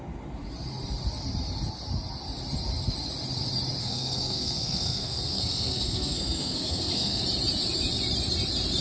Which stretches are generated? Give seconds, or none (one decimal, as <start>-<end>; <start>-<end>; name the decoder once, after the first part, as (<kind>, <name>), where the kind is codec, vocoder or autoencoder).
3.8-7.2 (codec, SNAC)